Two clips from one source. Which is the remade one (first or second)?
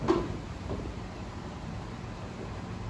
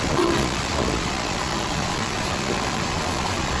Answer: second